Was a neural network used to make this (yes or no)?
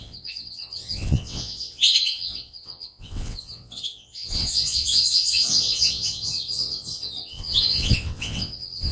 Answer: yes